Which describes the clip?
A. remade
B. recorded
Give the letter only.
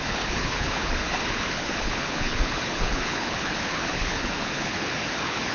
A